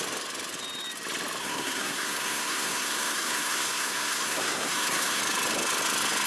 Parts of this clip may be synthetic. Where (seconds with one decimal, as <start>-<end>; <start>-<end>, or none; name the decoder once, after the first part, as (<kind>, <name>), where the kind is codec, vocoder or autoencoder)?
1.4-5.2 (codec, SNAC)